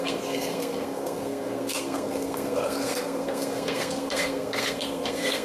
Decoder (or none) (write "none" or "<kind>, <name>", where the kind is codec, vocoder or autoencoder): codec, SNAC